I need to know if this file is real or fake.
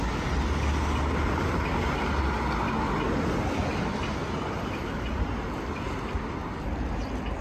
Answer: real